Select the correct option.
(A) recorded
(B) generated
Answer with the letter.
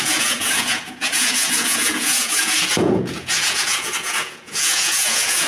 B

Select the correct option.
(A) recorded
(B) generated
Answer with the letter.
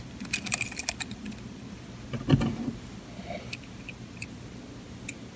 A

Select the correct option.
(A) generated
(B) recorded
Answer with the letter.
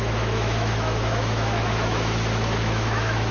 A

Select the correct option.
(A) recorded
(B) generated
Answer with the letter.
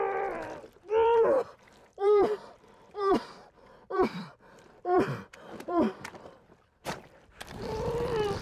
B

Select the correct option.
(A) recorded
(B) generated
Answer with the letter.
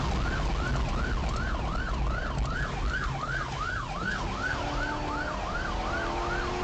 A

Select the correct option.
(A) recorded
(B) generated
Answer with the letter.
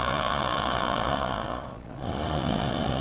B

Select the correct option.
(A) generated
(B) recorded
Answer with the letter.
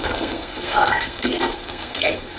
A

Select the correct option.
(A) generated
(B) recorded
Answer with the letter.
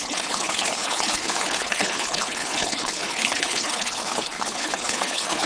A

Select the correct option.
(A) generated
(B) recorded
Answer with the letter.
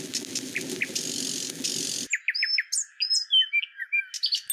B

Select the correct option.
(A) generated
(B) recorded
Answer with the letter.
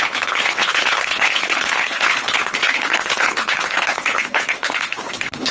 A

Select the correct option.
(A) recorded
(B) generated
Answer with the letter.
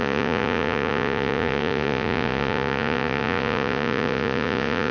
B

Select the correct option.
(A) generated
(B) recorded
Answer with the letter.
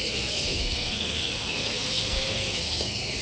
A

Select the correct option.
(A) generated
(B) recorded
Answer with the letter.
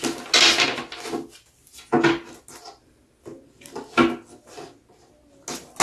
B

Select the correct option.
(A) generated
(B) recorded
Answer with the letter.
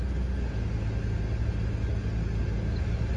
B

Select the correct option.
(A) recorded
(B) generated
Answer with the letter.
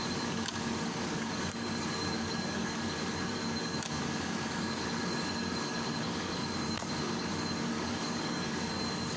B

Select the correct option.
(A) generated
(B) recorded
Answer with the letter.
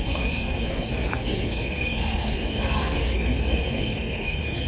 A